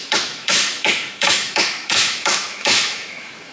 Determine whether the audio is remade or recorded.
remade